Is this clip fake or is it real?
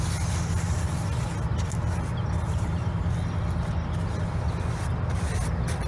real